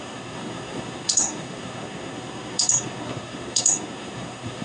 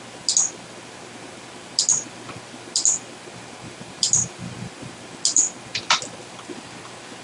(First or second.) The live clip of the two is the second